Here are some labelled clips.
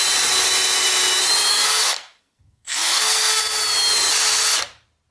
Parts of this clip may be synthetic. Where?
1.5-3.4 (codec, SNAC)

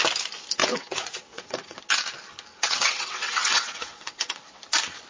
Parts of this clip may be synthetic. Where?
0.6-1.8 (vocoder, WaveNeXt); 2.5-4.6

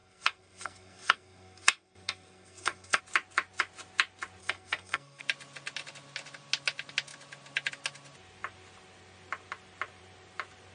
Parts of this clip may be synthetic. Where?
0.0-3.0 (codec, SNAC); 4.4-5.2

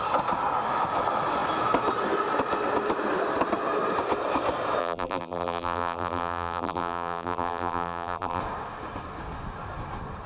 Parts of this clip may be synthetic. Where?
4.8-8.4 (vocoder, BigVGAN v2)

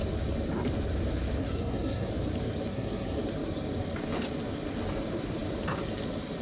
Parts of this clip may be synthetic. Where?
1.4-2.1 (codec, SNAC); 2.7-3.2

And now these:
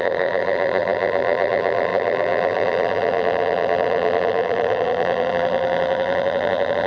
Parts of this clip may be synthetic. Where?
0.0-6.9 (vocoder, BigVGAN v2)

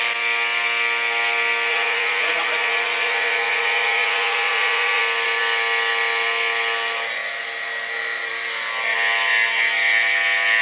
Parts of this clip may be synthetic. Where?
1.7-5.0 (vocoder, Vocos)